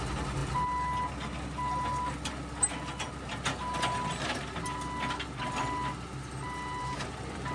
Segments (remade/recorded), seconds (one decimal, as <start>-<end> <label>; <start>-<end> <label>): 0.0-7.5 recorded